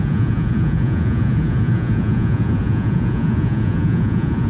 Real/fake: fake